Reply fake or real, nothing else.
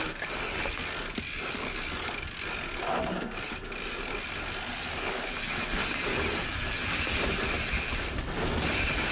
real